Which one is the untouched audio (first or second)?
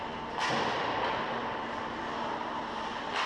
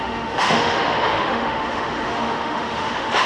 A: first